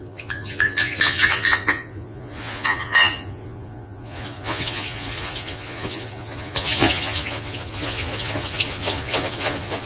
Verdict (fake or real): fake